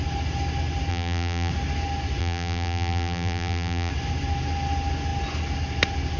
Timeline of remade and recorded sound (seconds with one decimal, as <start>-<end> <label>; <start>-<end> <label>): 0.0-0.9 recorded; 0.9-1.5 remade; 1.5-2.2 recorded; 2.2-3.9 remade; 3.9-6.2 recorded